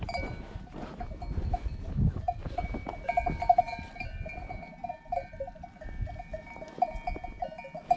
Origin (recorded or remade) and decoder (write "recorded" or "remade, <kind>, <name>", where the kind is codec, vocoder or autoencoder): recorded